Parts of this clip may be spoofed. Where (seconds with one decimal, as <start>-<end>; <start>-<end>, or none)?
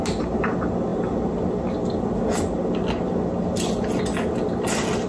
none